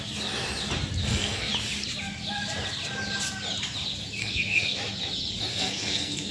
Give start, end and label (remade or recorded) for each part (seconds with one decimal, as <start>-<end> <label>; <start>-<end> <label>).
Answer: 0.0-1.0 recorded; 1.0-1.5 remade; 1.5-4.2 recorded; 4.2-4.8 remade; 4.8-5.5 recorded; 5.5-6.3 remade